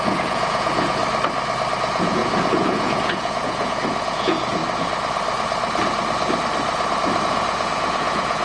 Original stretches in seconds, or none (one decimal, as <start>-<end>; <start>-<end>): 1.0-1.8; 4.6-7.2